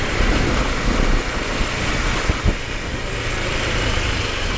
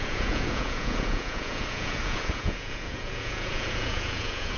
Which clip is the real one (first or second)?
first